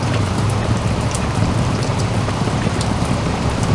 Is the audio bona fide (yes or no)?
no